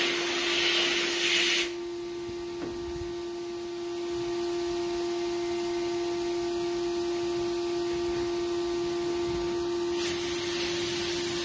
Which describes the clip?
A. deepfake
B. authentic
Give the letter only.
B